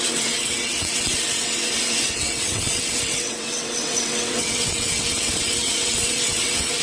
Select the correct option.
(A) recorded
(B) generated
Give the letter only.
B